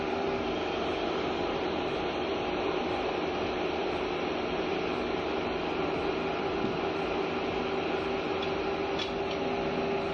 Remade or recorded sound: recorded